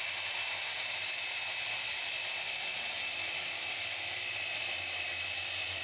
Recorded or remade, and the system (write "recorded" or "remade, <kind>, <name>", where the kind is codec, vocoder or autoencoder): recorded